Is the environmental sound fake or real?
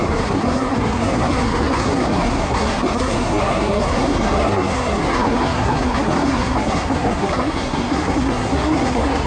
fake